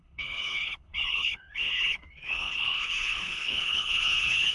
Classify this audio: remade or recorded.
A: remade